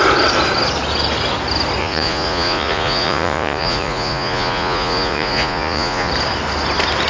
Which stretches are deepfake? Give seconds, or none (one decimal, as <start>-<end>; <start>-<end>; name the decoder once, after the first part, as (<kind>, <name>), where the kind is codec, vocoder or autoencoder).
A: 1.8-6.1 (vocoder, Vocos)